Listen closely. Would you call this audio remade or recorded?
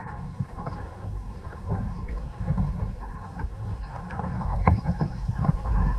remade